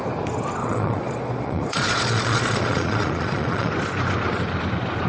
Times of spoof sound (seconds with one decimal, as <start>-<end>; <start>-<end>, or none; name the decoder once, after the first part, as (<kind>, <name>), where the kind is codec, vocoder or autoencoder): 0.6-3.7 (vocoder, Vocos)